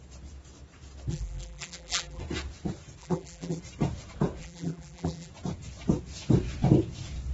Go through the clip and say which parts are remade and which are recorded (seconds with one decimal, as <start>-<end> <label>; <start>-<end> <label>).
0.0-1.1 recorded; 1.1-2.2 remade; 2.2-3.0 recorded; 3.0-3.6 remade; 3.6-4.4 recorded; 4.4-5.3 remade; 5.3-7.3 recorded